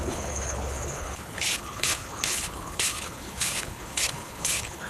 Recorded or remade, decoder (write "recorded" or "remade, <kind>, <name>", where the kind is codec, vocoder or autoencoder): remade, codec, HILCodec